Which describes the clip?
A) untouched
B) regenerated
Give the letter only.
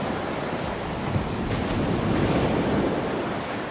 A